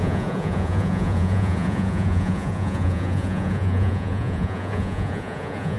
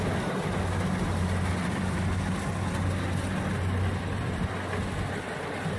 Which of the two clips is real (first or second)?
second